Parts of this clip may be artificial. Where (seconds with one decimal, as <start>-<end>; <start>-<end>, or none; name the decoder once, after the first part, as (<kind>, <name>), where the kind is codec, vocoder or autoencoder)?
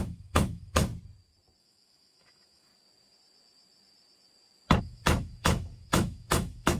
0.0-0.9 (autoencoder, DAC-VAE); 1.6-2.7; 4.8-6.8